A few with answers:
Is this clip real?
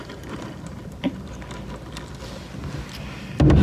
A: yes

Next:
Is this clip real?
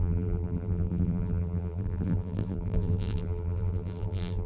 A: no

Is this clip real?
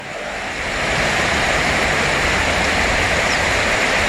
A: no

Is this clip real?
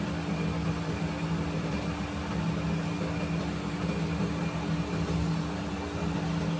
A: yes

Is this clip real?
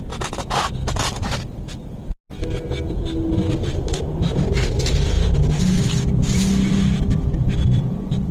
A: yes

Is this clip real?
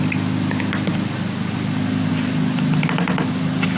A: yes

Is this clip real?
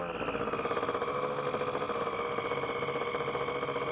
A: yes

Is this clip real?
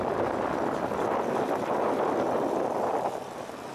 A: yes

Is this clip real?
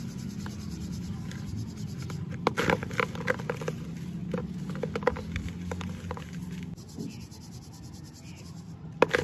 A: yes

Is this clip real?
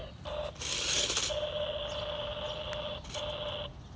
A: yes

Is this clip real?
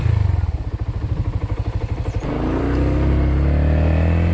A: yes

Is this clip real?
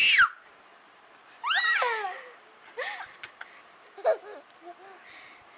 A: yes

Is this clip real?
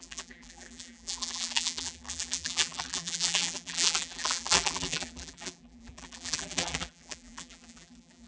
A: no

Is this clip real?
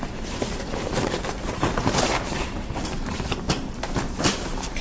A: no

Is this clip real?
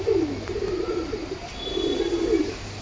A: no